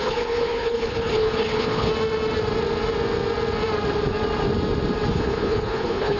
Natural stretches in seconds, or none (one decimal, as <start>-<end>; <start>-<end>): 1.9-5.1

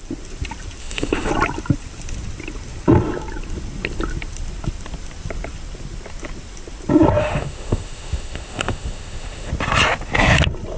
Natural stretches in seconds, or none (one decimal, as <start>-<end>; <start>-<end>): 0.0-0.8; 1.3-7.2; 9.5-10.8

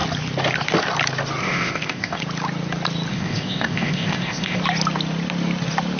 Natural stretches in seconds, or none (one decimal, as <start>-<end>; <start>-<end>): 0.0-1.4; 2.2-3.1; 4.6-6.0

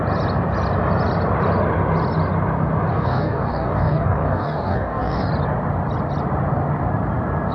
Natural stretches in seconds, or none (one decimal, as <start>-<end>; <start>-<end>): 0.0-2.9; 5.3-7.5

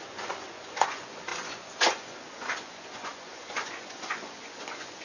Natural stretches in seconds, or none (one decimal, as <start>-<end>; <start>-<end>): none

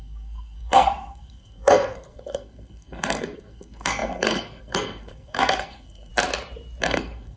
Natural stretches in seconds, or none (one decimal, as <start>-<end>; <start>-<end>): 6.1-6.8

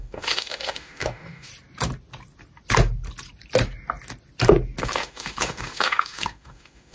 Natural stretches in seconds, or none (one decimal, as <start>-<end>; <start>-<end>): 1.5-4.8